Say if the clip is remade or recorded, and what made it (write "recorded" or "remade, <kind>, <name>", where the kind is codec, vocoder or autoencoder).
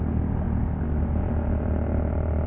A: recorded